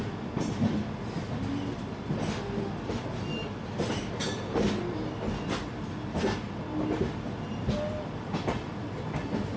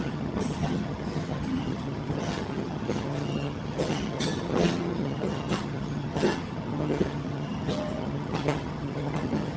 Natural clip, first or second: first